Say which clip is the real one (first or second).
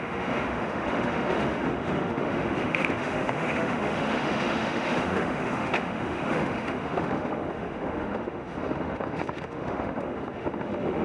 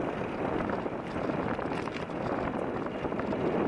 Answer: second